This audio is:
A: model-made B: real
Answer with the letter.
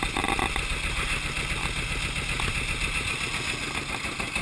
B